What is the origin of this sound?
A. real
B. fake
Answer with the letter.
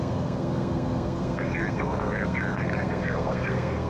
B